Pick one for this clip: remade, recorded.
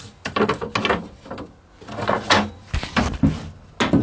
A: recorded